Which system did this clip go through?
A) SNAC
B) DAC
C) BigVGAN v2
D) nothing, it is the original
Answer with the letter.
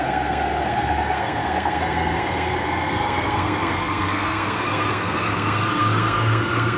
A